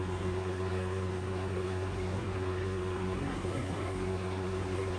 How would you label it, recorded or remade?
remade